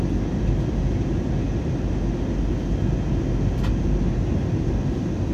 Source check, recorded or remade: recorded